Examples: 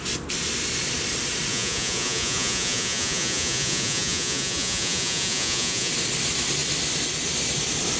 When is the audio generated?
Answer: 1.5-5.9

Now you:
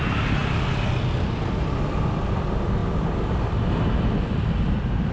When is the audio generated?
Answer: none

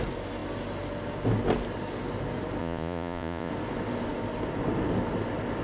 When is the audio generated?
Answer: 2.6-3.5

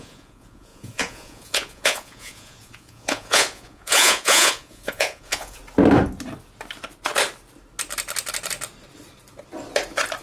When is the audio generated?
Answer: 0.0-5.6